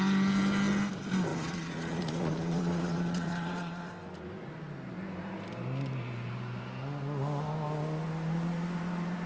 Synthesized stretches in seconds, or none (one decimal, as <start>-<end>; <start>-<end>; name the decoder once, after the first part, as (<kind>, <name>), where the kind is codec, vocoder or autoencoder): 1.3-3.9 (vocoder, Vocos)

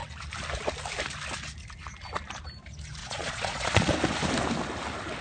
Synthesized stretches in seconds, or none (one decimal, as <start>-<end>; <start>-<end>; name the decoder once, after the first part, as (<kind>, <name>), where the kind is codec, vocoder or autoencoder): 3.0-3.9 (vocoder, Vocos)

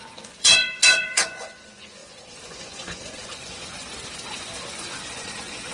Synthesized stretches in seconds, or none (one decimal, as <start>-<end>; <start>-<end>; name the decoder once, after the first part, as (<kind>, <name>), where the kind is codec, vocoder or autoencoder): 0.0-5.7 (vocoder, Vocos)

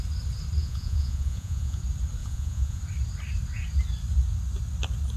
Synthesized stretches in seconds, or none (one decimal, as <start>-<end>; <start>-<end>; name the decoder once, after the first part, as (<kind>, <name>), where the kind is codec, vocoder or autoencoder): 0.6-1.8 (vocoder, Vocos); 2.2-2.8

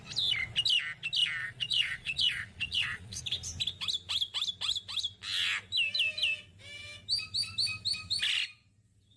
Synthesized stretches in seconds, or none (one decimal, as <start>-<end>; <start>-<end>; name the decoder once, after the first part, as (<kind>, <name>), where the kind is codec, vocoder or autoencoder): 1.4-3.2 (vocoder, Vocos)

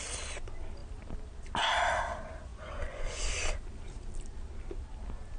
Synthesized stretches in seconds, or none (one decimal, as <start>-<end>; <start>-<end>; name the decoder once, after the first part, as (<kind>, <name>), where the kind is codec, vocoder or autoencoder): 2.5-3.2 (vocoder, Vocos)